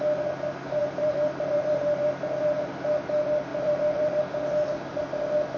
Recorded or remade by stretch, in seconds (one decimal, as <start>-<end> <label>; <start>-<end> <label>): 0.0-0.8 recorded; 0.8-2.7 remade; 2.7-3.5 recorded; 3.5-4.2 remade; 4.2-5.6 recorded

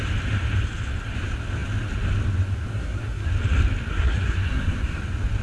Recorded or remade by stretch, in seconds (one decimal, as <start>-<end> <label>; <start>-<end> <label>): 0.0-2.7 recorded; 2.7-3.3 remade; 3.3-3.9 recorded; 3.9-5.0 remade; 5.0-5.4 recorded

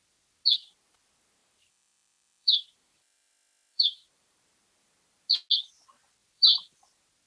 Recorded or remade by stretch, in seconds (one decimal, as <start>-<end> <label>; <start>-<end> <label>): 0.0-1.4 recorded; 1.4-3.3 remade; 3.3-3.7 recorded; 3.7-4.4 remade; 4.4-6.2 recorded; 6.2-6.8 remade; 6.8-7.3 recorded

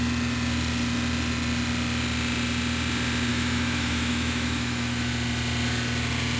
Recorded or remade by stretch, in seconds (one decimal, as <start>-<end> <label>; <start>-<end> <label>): 0.0-3.3 recorded; 3.3-5.1 remade; 5.1-6.4 recorded

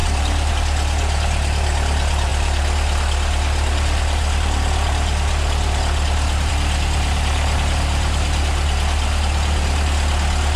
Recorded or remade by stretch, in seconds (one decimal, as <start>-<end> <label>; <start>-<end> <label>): 0.0-0.5 remade; 0.5-10.6 recorded